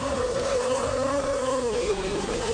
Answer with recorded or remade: remade